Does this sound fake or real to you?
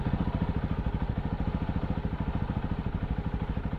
real